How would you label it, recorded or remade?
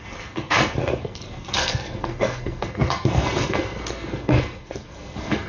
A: remade